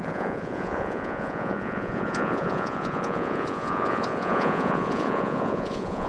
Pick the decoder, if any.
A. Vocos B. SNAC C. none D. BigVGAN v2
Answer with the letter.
A